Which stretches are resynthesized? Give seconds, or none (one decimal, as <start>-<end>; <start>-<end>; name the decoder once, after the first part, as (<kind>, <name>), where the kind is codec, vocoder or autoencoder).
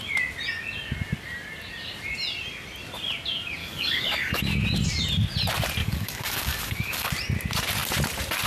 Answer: 3.6-4.4 (codec, DAC); 5.8-7.1